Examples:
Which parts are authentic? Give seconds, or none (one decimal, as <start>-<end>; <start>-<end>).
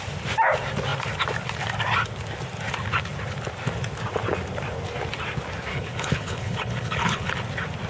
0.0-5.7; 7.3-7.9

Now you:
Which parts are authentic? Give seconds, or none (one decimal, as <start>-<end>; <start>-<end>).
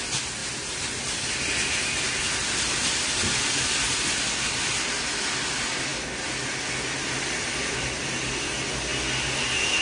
0.0-9.8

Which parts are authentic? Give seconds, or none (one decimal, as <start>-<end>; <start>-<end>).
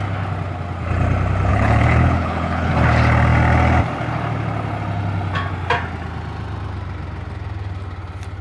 0.0-1.5; 2.7-8.4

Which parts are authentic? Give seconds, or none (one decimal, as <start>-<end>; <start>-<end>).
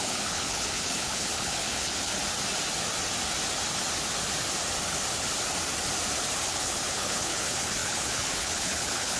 2.2-6.4